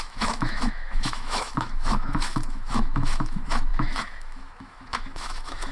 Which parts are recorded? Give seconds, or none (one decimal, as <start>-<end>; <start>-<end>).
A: none